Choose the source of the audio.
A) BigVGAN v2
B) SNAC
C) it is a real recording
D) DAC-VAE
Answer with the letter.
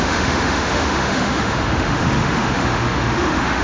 D